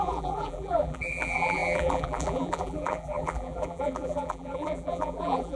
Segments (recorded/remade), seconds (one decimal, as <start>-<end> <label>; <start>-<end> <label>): 0.0-5.6 remade

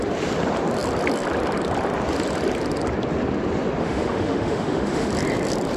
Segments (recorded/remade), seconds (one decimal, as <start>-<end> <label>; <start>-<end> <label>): 0.0-3.8 recorded; 3.8-5.1 remade; 5.1-5.8 recorded

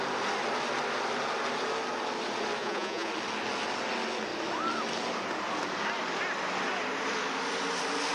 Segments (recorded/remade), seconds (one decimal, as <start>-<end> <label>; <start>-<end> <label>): 0.0-2.6 recorded; 2.6-3.1 remade; 3.1-8.1 recorded

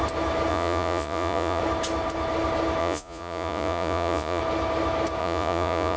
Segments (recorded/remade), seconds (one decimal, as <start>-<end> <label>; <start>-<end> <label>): 0.0-0.5 recorded; 0.5-1.6 remade; 1.6-2.8 recorded; 2.8-4.4 remade; 4.4-5.2 recorded; 5.2-6.0 remade

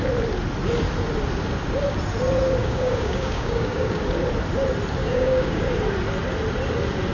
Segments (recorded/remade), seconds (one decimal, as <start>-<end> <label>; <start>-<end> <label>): 0.0-2.6 recorded; 2.6-4.0 remade; 4.0-5.0 recorded; 5.0-5.7 remade; 5.7-7.1 recorded

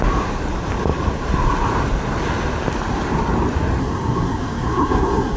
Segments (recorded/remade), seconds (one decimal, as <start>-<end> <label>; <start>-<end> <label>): 0.0-3.8 recorded; 3.8-5.4 remade

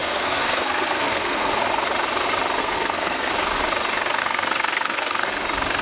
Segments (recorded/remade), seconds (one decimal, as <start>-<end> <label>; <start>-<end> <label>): 0.0-1.5 remade; 1.5-2.6 recorded; 2.6-3.3 remade; 3.3-4.2 recorded; 4.2-5.3 remade; 5.3-5.8 recorded